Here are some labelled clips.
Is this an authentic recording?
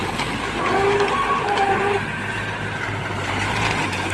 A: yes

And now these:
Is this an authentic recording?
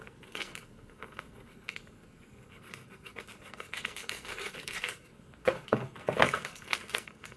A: no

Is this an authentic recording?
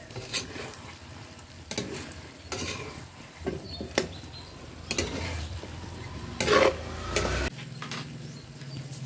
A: yes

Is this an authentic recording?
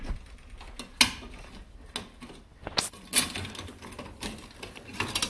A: yes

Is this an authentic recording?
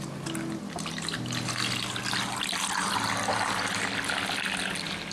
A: yes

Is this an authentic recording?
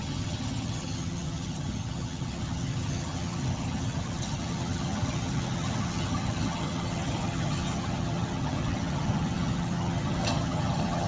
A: no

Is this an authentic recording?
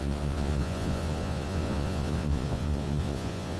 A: no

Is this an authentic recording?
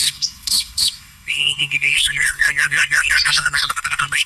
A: no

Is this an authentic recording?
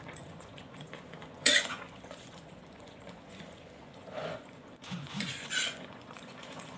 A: no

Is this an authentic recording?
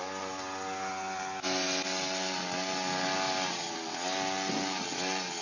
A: yes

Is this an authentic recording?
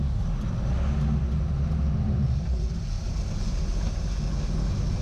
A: yes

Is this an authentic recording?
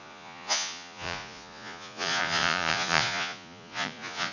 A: no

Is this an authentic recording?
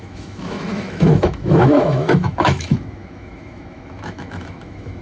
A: no